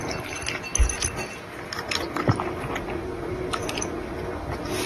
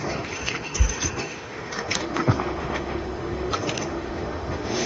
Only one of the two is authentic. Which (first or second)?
first